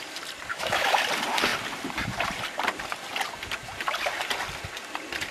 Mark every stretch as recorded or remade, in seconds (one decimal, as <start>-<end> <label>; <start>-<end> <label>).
0.0-0.5 recorded; 0.5-1.0 remade; 1.0-5.3 recorded